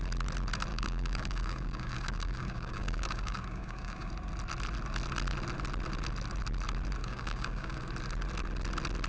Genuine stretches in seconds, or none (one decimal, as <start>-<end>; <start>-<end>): 0.0-0.7; 4.1-7.0; 7.9-9.1